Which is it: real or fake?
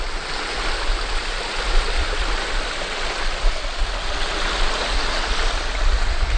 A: real